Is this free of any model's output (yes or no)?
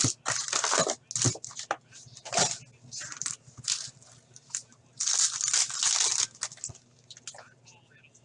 yes